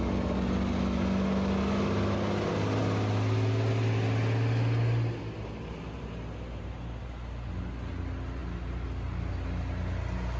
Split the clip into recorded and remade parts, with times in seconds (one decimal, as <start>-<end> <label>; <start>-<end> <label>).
0.0-10.4 recorded